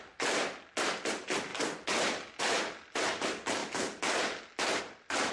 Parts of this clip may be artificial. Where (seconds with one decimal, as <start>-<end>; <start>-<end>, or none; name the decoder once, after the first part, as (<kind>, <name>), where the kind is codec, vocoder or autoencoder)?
none